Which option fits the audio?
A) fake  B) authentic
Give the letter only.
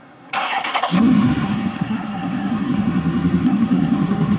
A